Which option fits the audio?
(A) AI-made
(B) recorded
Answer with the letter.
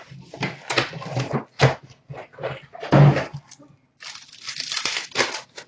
B